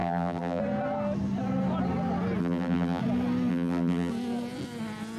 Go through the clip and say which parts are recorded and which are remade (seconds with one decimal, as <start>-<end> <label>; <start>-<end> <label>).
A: 0.0-0.6 remade; 0.6-2.4 recorded; 2.4-3.0 remade; 3.0-3.5 recorded; 3.5-4.1 remade; 4.1-5.2 recorded